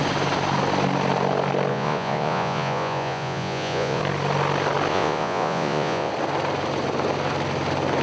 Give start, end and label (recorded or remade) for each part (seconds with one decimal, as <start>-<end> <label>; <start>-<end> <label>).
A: 0.0-1.7 recorded; 1.7-4.0 remade; 4.0-4.9 recorded; 4.9-6.1 remade; 6.1-8.0 recorded